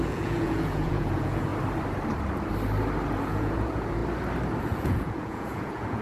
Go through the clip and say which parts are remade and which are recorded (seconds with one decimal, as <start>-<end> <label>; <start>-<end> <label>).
0.0-1.5 remade; 1.5-3.2 recorded; 3.2-4.0 remade; 4.0-4.6 recorded; 4.6-6.0 remade